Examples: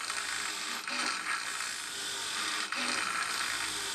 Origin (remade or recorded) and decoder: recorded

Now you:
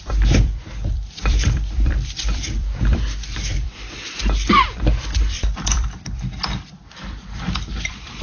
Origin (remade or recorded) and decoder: remade, vocoder, BigVGAN v2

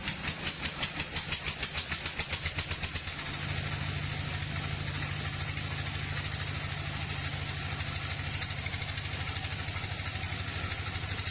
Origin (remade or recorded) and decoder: recorded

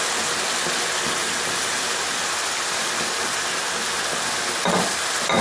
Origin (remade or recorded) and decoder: recorded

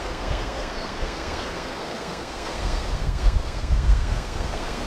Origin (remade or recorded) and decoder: remade, codec, SNAC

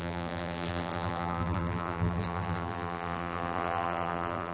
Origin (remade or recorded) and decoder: remade, vocoder, BigVGAN v2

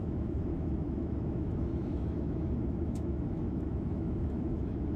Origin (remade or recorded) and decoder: remade, autoencoder, DAC-VAE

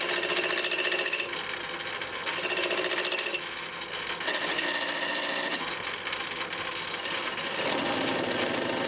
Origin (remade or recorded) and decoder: recorded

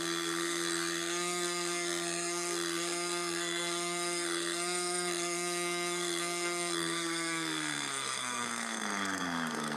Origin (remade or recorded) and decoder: remade, codec, SNAC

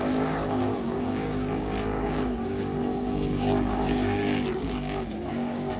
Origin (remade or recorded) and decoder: remade, codec, DAC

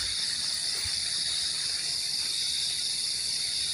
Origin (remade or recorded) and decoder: remade, vocoder, BigVGAN v2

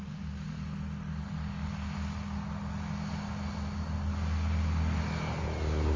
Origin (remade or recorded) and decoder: recorded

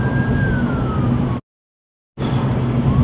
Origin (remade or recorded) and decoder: recorded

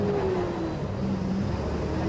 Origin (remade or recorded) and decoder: recorded